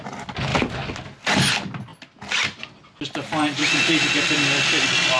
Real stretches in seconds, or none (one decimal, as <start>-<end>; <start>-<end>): 0.0-5.2